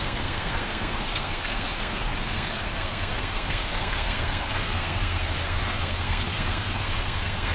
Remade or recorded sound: remade